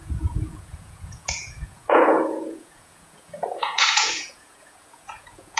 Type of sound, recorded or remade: remade